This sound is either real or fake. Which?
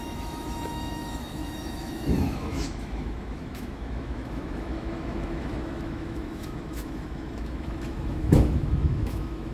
fake